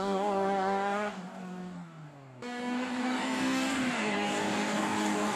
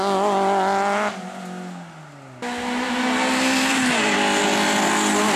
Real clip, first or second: second